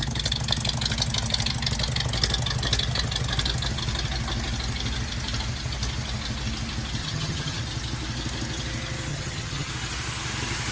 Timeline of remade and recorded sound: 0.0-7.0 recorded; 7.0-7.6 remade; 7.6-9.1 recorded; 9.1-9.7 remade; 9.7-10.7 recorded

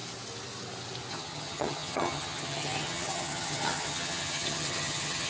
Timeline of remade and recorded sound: 0.0-1.1 recorded; 1.1-5.3 remade

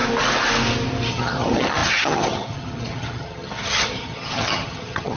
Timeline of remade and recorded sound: 0.0-1.1 recorded; 1.1-5.2 remade

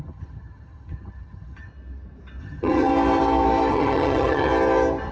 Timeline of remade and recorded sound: 0.0-1.7 remade; 1.7-2.4 recorded; 2.4-2.9 remade; 2.9-3.7 recorded; 3.7-4.5 remade; 4.5-5.1 recorded

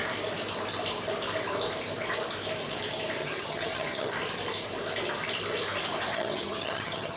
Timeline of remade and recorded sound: 0.0-3.2 recorded; 3.2-4.1 remade; 4.1-6.1 recorded; 6.1-7.2 remade